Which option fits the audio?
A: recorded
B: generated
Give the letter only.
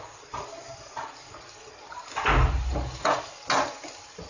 A